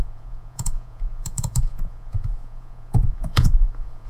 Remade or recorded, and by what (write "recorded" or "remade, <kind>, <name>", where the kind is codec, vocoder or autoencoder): remade, vocoder, Vocos